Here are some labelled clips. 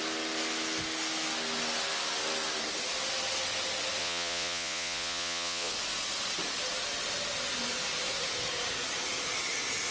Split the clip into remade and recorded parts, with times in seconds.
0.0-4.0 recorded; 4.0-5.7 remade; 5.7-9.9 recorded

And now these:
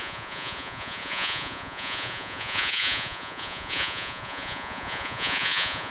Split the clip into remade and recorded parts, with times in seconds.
0.0-5.9 remade

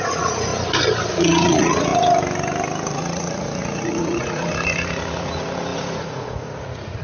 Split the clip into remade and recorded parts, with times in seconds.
0.0-0.5 remade; 0.5-1.1 recorded; 1.1-1.9 remade; 1.9-2.9 recorded; 2.9-7.0 remade